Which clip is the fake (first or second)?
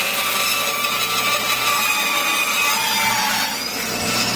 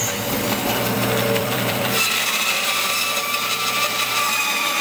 second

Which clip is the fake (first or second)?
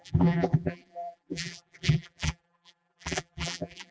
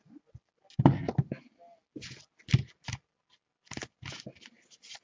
first